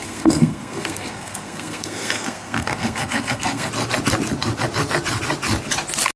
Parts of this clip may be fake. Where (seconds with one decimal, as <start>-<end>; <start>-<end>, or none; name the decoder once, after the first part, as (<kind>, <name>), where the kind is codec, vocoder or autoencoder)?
0.0-3.7 (codec, SNAC)